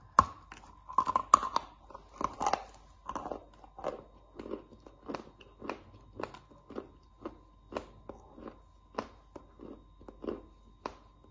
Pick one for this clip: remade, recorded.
recorded